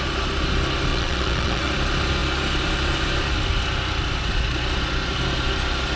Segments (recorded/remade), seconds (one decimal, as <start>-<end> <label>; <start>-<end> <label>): 0.0-0.9 recorded; 0.9-1.7 remade; 1.7-6.0 recorded